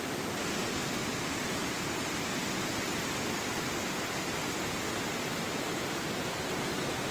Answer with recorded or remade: recorded